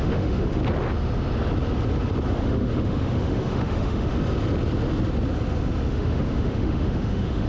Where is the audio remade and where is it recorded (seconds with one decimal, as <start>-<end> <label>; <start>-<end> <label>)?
0.0-0.6 remade; 0.6-2.4 recorded; 2.4-4.1 remade; 4.1-5.9 recorded; 5.9-7.5 remade